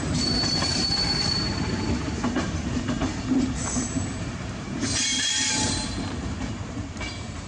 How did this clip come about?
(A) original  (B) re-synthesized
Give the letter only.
B